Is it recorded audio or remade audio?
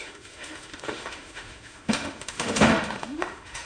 remade